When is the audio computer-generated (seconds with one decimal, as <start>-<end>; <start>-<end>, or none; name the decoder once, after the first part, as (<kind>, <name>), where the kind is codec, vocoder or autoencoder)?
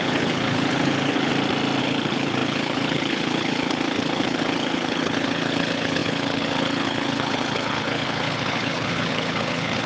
0.0-1.3 (codec, HILCodec); 1.8-9.9